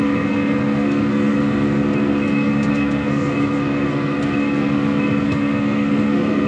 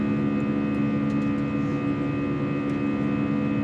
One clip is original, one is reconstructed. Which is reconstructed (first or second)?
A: first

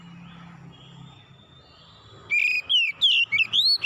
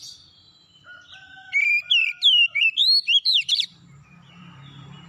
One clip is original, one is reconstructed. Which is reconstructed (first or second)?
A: second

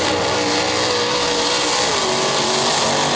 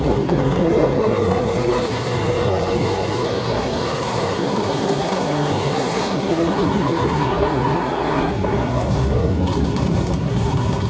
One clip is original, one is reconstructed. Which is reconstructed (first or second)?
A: second